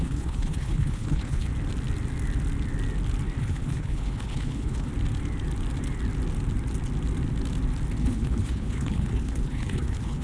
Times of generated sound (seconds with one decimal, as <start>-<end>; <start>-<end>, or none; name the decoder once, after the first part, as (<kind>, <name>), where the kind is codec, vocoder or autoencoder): 0.0-1.5 (codec, HILCodec); 3.4-4.9; 8.0-10.2